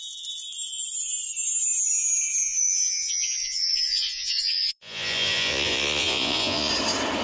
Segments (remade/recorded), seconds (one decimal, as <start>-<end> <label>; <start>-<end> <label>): 0.0-2.4 recorded; 2.4-6.7 remade; 6.7-7.2 recorded